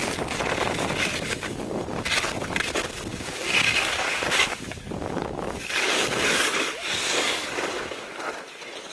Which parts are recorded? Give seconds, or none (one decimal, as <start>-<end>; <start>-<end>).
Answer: 0.0-1.1; 1.9-3.1; 8.3-8.9